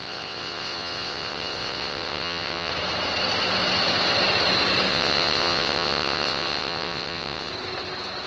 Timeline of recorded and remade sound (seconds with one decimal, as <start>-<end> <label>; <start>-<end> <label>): 0.0-2.7 remade; 2.7-4.9 recorded; 4.9-7.5 remade; 7.5-8.3 recorded